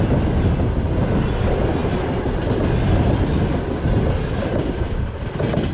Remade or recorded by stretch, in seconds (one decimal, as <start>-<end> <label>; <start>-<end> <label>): 0.0-5.7 recorded